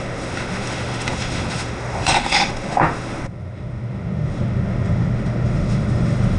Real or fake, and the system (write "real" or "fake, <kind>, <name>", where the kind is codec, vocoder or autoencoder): fake, autoencoder, DAC-VAE